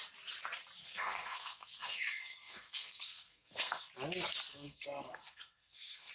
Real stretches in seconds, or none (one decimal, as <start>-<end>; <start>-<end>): 0.0-0.8; 3.9-4.5